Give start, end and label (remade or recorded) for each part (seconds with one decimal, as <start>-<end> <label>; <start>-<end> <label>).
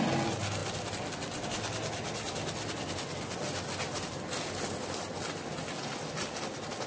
0.0-6.9 recorded